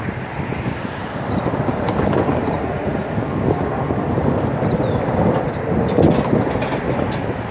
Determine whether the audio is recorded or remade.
recorded